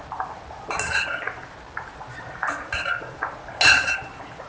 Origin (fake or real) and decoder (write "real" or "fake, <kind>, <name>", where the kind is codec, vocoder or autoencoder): real